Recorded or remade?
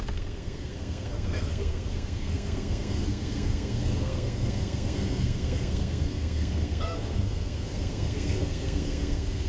remade